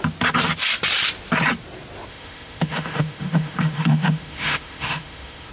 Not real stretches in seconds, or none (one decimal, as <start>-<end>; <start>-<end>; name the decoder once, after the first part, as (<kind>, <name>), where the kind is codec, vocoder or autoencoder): 2.1-5.5 (autoencoder, DAC-VAE)